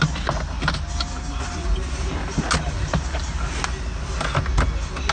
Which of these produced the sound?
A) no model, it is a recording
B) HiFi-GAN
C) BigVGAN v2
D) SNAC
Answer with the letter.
A